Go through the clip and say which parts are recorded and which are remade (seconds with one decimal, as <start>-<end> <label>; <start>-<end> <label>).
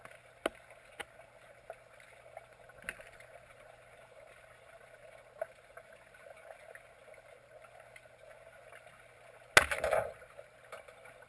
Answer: 0.0-11.3 recorded